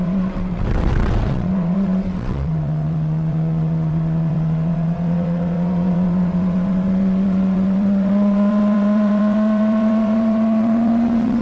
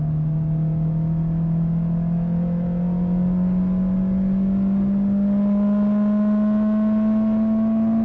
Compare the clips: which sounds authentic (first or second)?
second